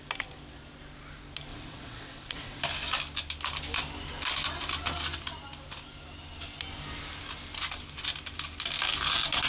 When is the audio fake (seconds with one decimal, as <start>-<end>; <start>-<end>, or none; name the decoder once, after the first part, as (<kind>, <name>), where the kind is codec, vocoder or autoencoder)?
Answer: 1.5-2.6 (vocoder, WaveNeXt)